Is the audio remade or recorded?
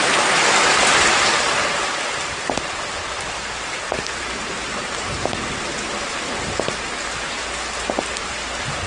recorded